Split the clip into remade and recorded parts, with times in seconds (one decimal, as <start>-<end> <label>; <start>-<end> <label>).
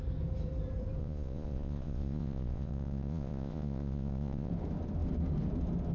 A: 0.0-1.0 recorded; 1.0-4.5 remade; 4.5-5.9 recorded